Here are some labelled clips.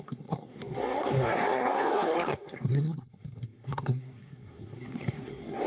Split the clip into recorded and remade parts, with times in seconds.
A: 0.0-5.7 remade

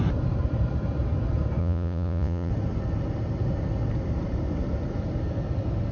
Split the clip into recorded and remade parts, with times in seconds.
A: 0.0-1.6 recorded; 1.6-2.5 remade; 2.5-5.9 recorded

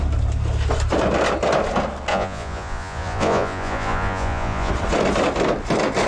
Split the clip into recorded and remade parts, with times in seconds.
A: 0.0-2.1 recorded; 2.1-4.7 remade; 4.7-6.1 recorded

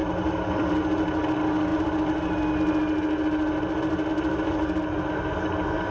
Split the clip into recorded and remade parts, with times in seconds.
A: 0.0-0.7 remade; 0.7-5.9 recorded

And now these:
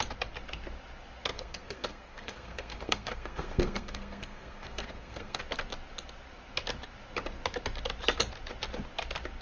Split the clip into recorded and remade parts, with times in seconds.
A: 0.0-1.3 recorded; 1.3-5.4 remade; 5.4-9.4 recorded

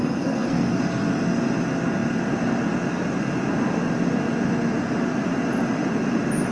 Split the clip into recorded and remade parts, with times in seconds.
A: 0.0-0.8 remade; 0.8-6.5 recorded

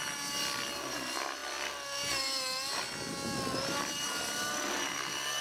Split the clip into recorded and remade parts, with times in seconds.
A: 0.0-5.4 recorded

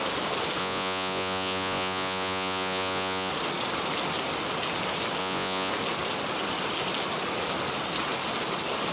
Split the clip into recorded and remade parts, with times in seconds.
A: 0.0-0.6 recorded; 0.6-3.3 remade; 3.3-5.2 recorded; 5.2-5.7 remade; 5.7-8.9 recorded